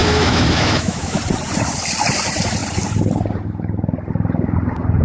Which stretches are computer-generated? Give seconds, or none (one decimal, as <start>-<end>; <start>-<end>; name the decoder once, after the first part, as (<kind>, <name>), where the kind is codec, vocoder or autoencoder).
0.0-1.2 (autoencoder, DAC-VAE)